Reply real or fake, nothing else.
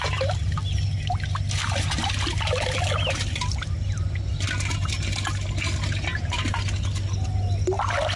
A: real